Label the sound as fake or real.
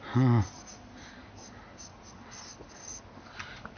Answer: real